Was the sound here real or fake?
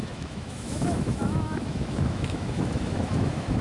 fake